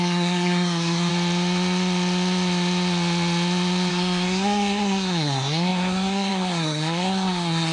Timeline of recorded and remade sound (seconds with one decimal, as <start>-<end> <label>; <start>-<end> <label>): 0.0-1.1 remade; 1.1-3.9 recorded; 3.9-7.7 remade